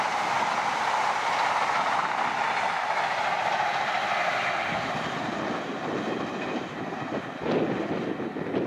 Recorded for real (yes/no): yes